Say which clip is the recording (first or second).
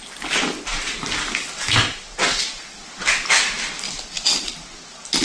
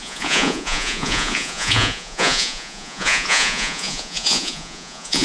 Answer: first